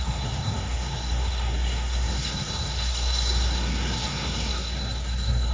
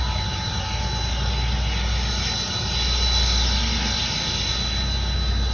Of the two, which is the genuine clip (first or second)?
second